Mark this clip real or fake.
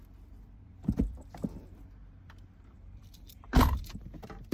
fake